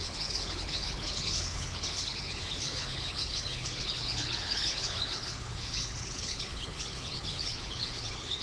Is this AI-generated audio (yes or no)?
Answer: yes